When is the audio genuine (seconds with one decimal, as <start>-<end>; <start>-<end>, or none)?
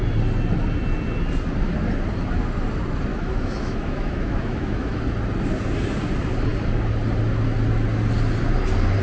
0.0-3.1; 5.0-9.0